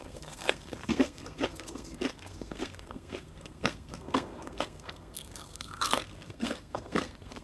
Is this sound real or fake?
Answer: fake